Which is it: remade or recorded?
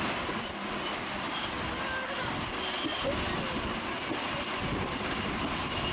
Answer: recorded